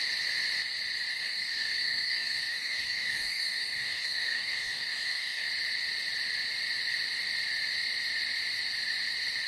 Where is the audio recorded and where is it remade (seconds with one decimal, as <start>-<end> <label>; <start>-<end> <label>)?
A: 0.0-1.1 recorded; 1.1-5.5 remade; 5.5-9.5 recorded